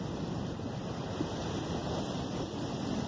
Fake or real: real